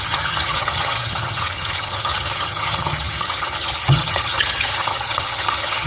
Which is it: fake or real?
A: fake